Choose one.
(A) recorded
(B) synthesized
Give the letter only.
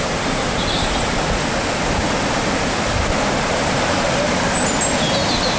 A